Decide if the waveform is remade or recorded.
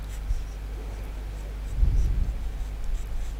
recorded